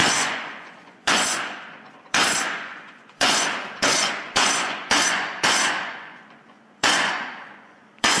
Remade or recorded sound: remade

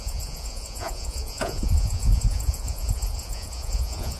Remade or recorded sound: remade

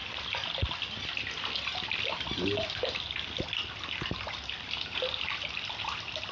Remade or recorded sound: recorded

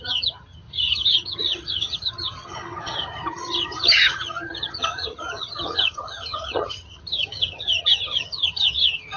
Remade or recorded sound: remade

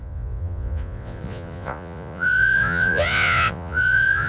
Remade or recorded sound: remade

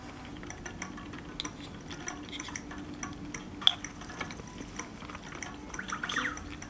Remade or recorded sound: recorded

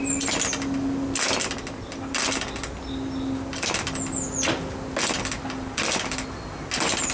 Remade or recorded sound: recorded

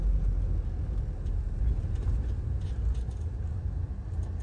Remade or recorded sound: recorded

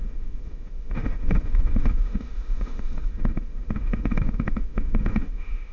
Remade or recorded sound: remade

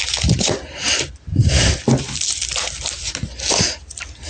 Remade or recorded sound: recorded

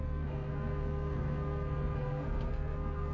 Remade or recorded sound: remade